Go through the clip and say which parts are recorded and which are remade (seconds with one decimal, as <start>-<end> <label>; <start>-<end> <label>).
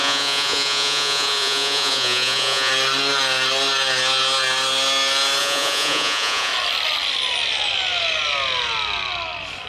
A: 0.0-2.7 remade; 2.7-5.4 recorded; 5.4-6.5 remade; 6.5-9.7 recorded